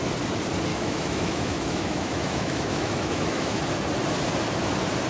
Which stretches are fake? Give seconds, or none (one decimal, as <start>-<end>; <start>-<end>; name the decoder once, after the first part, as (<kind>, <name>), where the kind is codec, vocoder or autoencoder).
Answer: 0.7-3.6 (autoencoder, DAC-VAE)